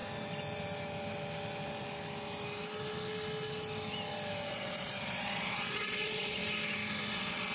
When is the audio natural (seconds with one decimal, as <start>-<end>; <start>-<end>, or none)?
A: 0.0-4.5; 6.4-7.1